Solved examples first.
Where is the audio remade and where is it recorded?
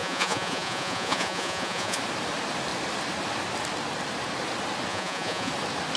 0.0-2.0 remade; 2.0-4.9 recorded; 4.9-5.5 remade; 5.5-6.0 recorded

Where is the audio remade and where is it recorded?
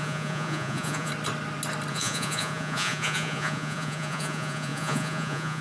0.0-1.1 remade; 1.1-1.9 recorded; 1.9-5.6 remade